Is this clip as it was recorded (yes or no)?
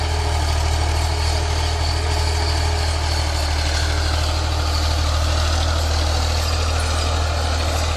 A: yes